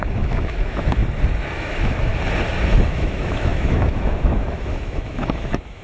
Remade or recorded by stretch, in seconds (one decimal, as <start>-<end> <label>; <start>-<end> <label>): 0.0-1.0 remade; 1.0-1.6 recorded; 1.6-2.1 remade; 2.1-2.9 recorded; 2.9-5.8 remade